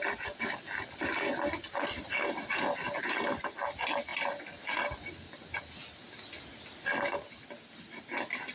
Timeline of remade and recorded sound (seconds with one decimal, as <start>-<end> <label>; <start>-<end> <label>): 0.0-8.5 recorded